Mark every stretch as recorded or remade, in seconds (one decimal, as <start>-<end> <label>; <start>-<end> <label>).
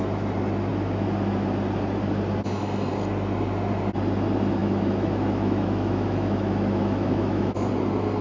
0.0-4.6 recorded; 4.6-7.7 remade; 7.7-8.2 recorded